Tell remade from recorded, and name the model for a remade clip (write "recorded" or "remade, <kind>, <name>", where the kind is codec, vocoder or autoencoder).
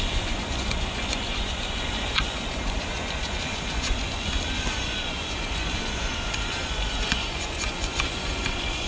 remade, vocoder, Vocos